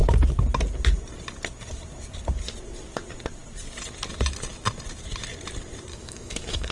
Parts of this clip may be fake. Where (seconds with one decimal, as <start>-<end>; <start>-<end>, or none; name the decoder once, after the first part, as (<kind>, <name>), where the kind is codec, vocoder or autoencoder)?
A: 5.9-6.7 (autoencoder, DAC-VAE)